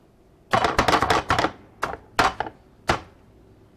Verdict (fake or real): real